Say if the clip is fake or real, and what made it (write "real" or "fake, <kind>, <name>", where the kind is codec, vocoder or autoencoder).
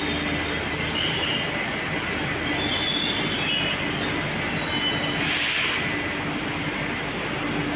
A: real